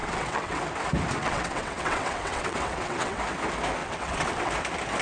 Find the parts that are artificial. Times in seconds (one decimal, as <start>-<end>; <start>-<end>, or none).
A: 0.0-0.6; 1.2-3.2; 3.8-4.5